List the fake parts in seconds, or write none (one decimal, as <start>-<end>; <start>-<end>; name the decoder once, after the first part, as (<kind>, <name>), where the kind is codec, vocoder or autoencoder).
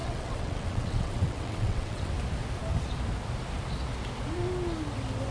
0.0-2.1 (vocoder, WaveNeXt)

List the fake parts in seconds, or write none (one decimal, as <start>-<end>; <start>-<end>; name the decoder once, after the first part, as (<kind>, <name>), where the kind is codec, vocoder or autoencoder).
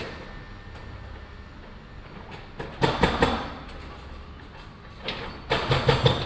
none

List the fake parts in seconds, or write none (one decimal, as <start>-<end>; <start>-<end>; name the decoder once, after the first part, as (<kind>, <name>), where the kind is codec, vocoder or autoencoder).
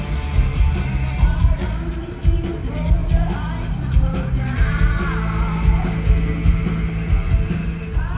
none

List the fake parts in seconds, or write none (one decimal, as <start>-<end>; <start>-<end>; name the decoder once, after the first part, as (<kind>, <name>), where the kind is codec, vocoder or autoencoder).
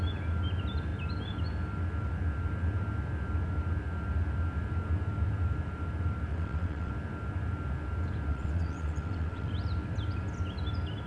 6.3-6.9 (vocoder, WaveNeXt); 8.3-9.5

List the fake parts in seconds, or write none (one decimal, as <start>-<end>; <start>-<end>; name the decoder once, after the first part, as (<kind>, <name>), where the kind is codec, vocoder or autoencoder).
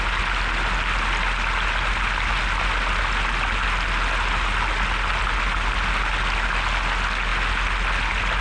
none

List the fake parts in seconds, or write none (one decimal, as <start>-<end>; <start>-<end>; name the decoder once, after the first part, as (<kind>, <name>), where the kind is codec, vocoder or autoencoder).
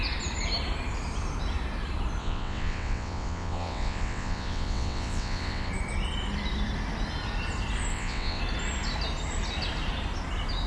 2.2-5.7 (vocoder, WaveNeXt); 7.9-8.4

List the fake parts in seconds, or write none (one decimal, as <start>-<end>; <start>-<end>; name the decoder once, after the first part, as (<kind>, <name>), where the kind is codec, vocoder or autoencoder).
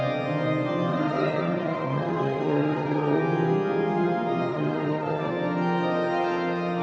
0.9-3.2 (vocoder, WaveNeXt); 4.5-5.3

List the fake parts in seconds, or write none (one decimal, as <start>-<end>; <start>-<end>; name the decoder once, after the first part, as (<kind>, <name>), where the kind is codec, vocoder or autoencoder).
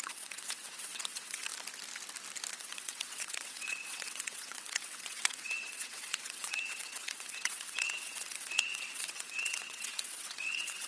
0.0-1.5 (vocoder, WaveNeXt); 2.5-10.9